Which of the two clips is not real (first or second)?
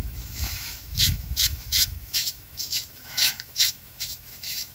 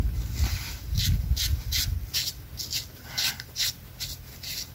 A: first